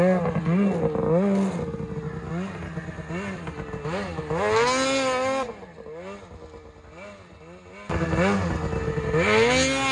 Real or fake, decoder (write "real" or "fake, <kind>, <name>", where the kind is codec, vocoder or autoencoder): real